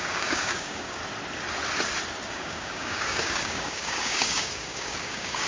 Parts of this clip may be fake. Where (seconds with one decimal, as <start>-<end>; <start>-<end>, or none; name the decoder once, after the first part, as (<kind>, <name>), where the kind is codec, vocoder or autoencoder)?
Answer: 0.0-1.0 (codec, DAC); 2.3-5.5